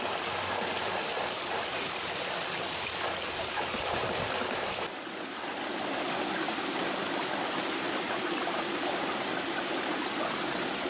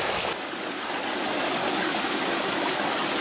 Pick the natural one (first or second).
second